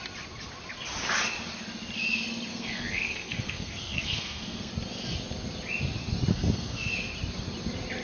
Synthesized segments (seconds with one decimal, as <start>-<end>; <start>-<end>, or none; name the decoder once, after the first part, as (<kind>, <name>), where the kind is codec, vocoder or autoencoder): 2.5-4.7 (codec, SNAC); 6.3-6.9